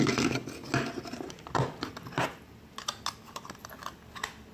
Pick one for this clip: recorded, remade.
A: recorded